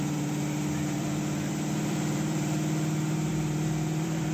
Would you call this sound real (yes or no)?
no